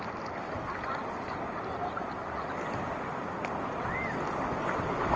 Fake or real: real